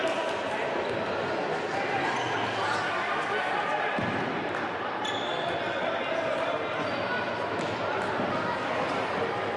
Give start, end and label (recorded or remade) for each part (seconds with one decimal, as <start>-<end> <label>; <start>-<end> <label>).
0.0-9.6 recorded